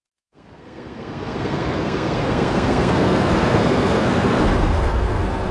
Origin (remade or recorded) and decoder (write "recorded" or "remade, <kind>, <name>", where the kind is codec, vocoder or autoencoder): remade, codec, SNAC